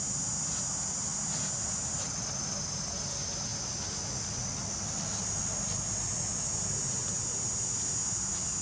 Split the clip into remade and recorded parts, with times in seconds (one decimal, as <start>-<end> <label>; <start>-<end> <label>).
0.0-8.6 recorded